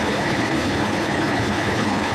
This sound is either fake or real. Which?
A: fake